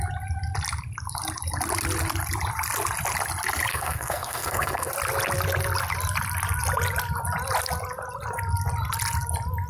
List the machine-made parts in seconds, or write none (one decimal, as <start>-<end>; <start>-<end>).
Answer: 3.7-4.9